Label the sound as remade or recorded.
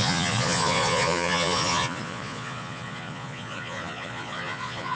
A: remade